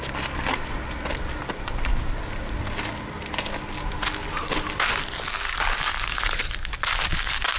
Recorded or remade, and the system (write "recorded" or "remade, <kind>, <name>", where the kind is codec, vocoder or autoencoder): recorded